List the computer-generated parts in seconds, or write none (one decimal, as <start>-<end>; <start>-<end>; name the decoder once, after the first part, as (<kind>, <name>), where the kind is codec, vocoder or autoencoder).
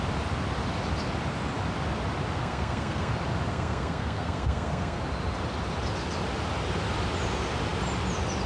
2.4-3.1 (codec, SNAC); 3.5-5.0